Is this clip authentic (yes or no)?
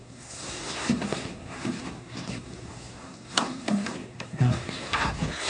no